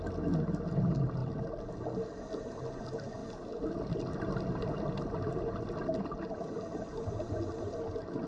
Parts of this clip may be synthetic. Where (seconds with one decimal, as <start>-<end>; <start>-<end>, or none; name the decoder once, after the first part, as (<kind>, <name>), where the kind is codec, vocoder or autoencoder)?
none